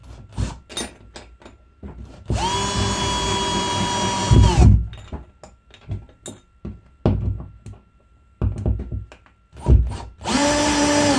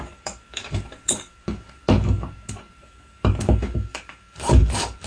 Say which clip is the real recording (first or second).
first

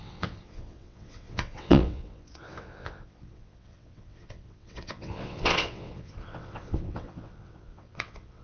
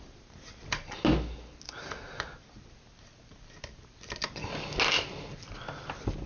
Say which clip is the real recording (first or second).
second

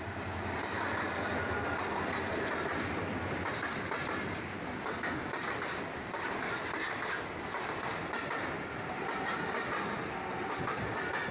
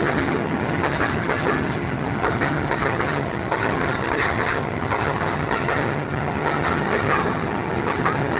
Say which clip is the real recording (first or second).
first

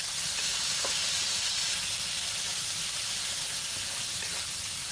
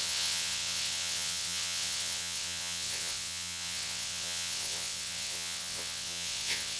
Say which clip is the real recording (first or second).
first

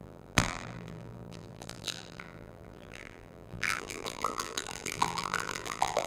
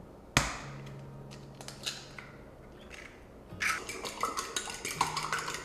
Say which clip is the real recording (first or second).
second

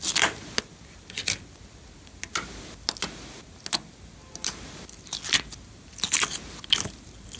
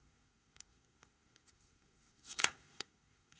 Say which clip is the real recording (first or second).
first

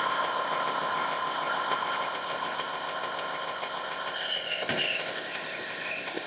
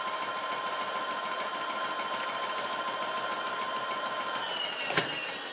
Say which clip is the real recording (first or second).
second